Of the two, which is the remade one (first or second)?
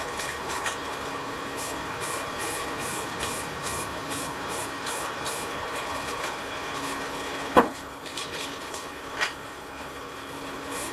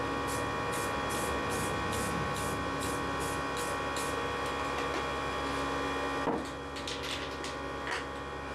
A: first